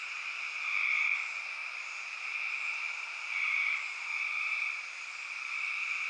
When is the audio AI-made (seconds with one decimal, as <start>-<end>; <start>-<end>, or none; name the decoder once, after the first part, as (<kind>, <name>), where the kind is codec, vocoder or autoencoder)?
1.6-5.2 (vocoder, BigVGAN v2)

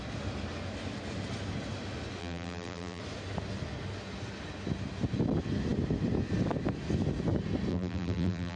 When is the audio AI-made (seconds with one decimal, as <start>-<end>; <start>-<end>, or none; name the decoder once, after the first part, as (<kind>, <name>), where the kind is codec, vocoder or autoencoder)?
2.2-3.0 (vocoder, BigVGAN v2); 7.7-8.6

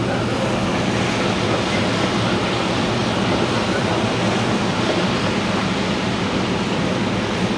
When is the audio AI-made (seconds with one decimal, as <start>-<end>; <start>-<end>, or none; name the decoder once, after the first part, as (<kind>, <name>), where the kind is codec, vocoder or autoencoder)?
none

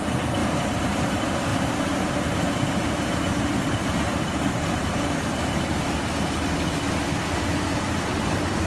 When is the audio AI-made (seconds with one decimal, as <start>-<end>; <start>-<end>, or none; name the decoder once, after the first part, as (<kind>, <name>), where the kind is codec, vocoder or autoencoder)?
0.4-1.0 (vocoder, BigVGAN v2); 1.5-6.0; 7.7-8.7

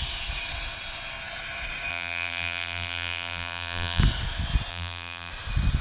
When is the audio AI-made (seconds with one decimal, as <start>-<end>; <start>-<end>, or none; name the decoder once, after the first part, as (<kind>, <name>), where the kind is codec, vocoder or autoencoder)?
1.9-4.0 (vocoder, BigVGAN v2); 4.7-5.3

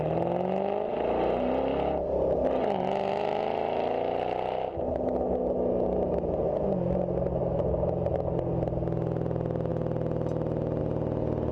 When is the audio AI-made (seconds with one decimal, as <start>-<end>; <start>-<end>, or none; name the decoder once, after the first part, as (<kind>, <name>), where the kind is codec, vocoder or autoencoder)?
0.9-1.6 (vocoder, BigVGAN v2); 7.4-8.1